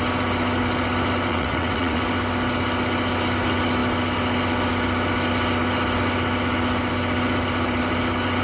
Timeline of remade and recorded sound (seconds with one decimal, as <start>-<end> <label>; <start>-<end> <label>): 0.0-1.3 recorded; 1.3-2.0 remade; 2.0-8.4 recorded